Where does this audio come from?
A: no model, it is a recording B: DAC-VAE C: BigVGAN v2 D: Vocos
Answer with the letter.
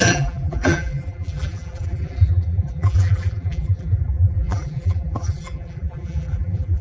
C